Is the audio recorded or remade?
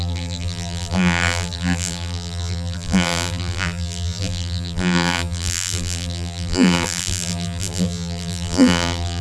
remade